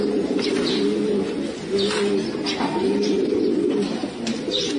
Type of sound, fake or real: real